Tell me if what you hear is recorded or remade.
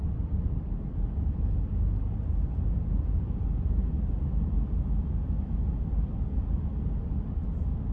remade